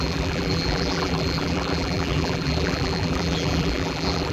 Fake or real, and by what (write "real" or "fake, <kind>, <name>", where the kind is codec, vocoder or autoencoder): fake, vocoder, BigVGAN v2